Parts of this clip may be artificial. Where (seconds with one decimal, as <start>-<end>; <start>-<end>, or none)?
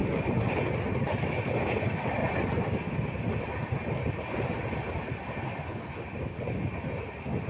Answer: 2.2-5.4